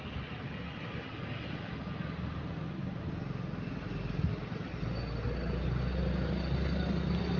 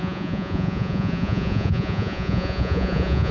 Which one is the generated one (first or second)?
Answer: second